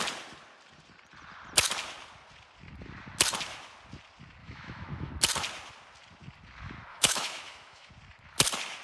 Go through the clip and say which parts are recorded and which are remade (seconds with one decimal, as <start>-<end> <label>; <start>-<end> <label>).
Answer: 0.0-4.4 recorded; 4.4-5.1 remade; 5.1-6.9 recorded; 6.9-7.9 remade; 7.9-8.8 recorded